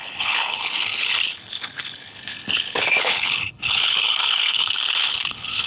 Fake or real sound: fake